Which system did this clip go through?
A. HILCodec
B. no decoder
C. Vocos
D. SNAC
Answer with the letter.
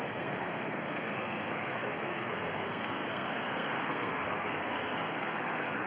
D